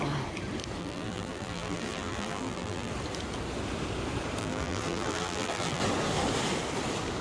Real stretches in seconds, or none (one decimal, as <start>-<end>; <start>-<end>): 0.0-0.8; 2.9-4.4; 5.8-7.2

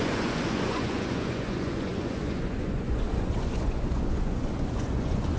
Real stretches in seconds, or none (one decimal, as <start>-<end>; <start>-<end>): none

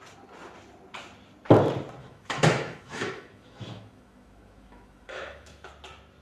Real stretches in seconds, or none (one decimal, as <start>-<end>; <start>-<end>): 0.0-2.0; 5.7-6.2

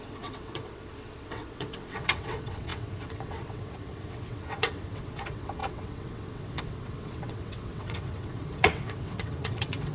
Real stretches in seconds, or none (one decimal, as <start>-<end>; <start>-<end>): none

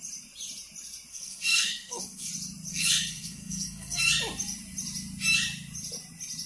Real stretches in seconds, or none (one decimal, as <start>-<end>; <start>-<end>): 0.0-1.1; 2.3-2.7; 4.0-6.5

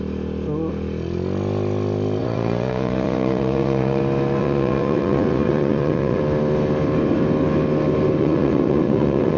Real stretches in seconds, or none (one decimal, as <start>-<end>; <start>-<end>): 0.0-2.2; 4.0-4.4; 6.2-8.2